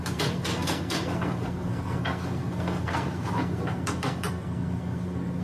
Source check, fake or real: fake